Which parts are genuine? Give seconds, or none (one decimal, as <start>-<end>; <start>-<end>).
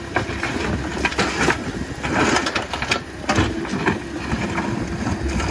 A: 0.0-5.5